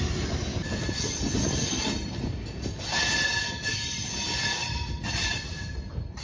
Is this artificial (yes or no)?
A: no